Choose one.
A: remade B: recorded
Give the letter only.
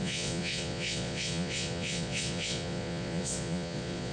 A